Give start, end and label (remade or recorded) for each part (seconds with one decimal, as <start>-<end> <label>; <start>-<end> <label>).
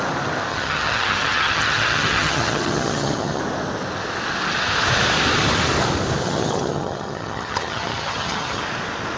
0.0-0.5 recorded; 0.5-3.4 remade; 3.4-6.2 recorded; 6.2-8.6 remade; 8.6-9.2 recorded